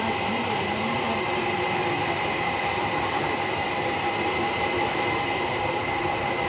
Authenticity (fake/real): fake